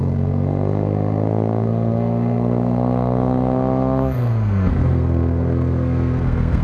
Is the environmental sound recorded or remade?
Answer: remade